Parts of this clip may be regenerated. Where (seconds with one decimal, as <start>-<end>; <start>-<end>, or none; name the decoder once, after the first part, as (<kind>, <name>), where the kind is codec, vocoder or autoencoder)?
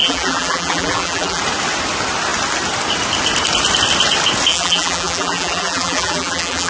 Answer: 0.0-1.4 (vocoder, BigVGAN v2); 4.5-6.7